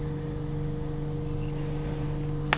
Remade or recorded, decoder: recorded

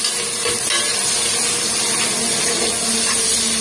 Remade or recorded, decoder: recorded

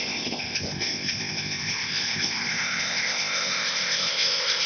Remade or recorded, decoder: remade, codec, ZipCodec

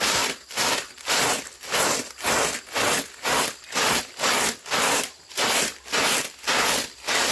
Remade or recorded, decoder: recorded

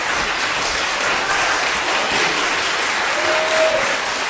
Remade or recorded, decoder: recorded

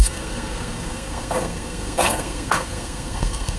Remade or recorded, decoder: remade, codec, SNAC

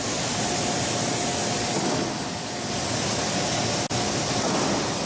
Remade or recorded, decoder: recorded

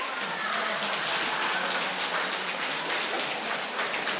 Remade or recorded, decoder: recorded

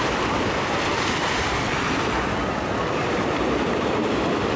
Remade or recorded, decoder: recorded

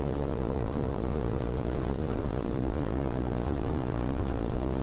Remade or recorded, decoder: remade, vocoder, Vocos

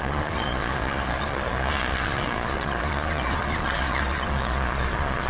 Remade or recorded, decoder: remade, vocoder, Vocos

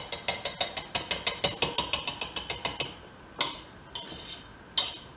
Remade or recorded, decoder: recorded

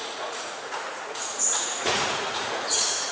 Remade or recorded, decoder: remade, vocoder, Vocos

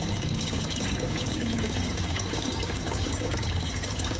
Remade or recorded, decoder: remade, codec, DAC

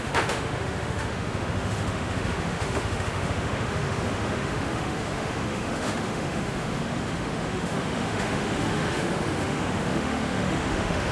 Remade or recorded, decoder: remade, autoencoder, DAC-VAE